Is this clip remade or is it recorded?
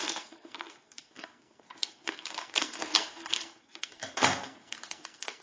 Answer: remade